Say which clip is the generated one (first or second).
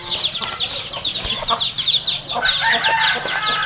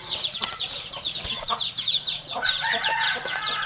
second